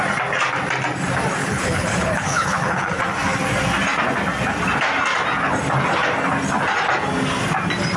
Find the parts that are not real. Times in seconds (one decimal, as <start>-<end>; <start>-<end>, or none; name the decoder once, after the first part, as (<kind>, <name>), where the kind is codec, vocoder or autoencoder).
1.4-3.0 (codec, HILCodec)